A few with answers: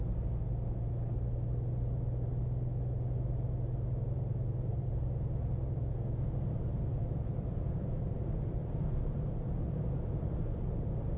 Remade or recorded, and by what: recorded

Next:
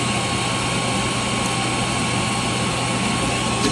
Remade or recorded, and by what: recorded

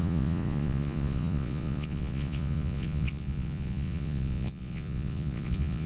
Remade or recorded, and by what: remade, vocoder, Vocos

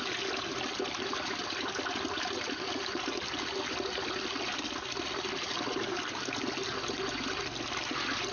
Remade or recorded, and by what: recorded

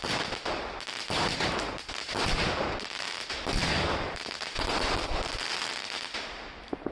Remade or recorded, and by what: remade, vocoder, BigVGAN v2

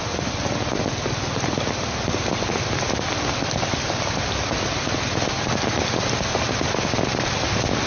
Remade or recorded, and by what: recorded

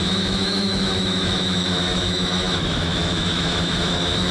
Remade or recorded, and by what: remade, autoencoder, DAC-VAE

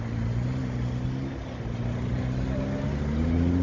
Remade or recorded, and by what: recorded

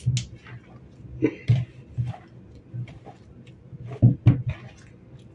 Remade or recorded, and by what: recorded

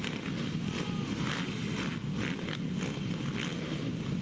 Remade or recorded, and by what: recorded